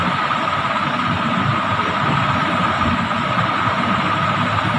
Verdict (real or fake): real